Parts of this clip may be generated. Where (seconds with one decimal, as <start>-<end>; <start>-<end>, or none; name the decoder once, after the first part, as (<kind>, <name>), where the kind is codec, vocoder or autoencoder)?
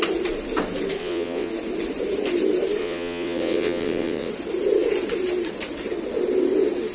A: 1.0-1.5 (vocoder, WaveNeXt); 2.8-4.3